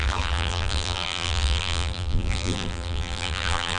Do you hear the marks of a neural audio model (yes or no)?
yes